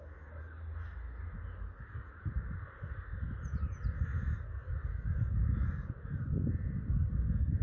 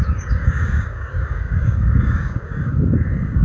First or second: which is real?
first